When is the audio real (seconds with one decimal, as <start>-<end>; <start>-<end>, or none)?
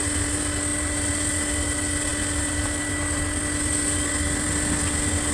0.0-5.3